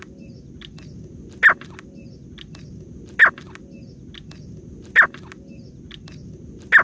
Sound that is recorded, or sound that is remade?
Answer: recorded